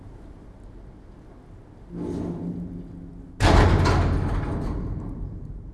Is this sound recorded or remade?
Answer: recorded